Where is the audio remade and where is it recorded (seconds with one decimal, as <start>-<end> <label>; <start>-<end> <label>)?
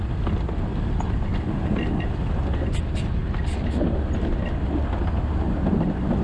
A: 0.0-6.2 recorded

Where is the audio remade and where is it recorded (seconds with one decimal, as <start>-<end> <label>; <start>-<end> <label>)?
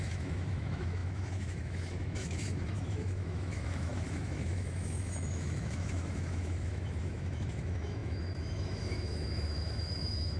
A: 0.0-10.4 remade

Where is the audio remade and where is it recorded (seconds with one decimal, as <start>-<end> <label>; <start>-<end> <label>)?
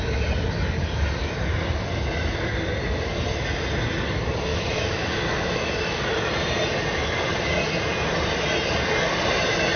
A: 0.0-4.5 recorded; 4.5-6.0 remade; 6.0-9.8 recorded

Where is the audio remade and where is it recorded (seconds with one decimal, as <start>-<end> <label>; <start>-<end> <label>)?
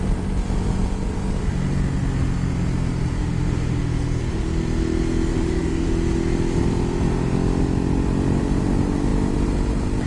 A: 0.0-3.2 recorded; 3.2-3.8 remade; 3.8-5.3 recorded; 5.3-5.9 remade; 5.9-10.1 recorded